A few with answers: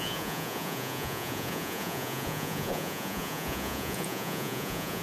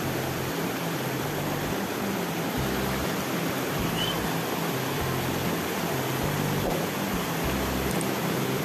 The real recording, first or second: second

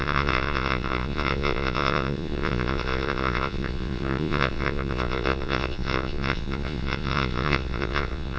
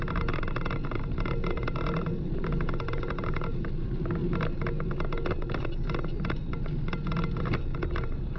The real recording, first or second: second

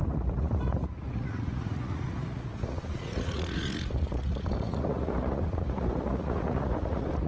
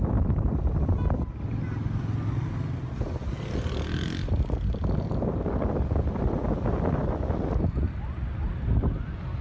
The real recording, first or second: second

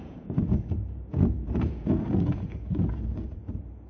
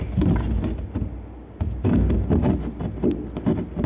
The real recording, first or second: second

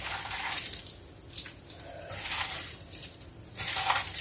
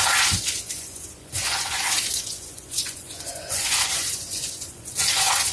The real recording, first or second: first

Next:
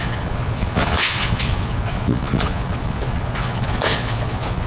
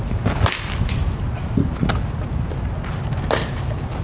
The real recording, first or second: second